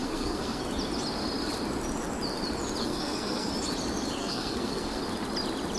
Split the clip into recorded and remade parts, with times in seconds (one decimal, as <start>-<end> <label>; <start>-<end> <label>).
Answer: 0.0-0.6 remade; 0.6-2.8 recorded; 2.8-3.5 remade; 3.5-4.2 recorded; 4.2-5.0 remade; 5.0-5.8 recorded